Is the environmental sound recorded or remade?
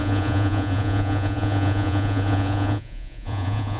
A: remade